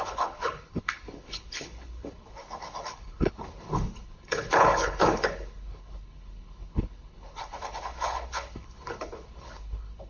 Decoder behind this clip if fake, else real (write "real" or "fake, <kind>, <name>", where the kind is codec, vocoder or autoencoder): fake, codec, HILCodec